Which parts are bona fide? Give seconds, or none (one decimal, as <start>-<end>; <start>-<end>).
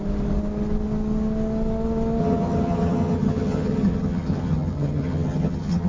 0.0-2.2